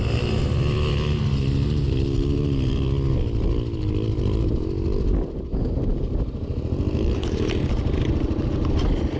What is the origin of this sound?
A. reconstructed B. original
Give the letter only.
B